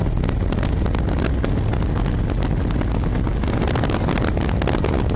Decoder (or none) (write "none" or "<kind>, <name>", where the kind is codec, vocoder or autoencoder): none